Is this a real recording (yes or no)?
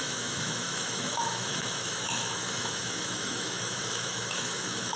no